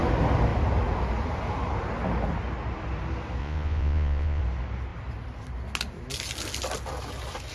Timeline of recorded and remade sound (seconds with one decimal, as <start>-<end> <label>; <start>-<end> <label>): 0.0-3.4 recorded; 3.4-4.4 remade; 4.4-7.5 recorded